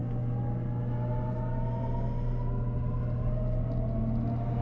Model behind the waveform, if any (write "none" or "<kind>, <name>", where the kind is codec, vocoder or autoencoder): none